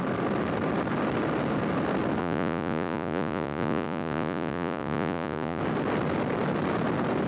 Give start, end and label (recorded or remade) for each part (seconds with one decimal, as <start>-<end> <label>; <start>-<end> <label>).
0.0-2.2 recorded; 2.2-5.6 remade; 5.6-7.3 recorded